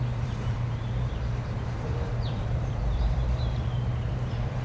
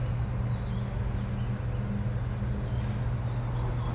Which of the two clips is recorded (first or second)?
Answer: second